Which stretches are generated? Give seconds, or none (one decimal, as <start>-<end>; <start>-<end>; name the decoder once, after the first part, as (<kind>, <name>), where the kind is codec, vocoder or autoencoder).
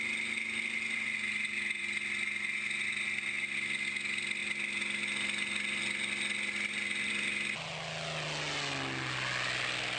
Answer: none